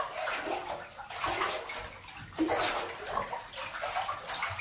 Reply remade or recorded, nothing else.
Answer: recorded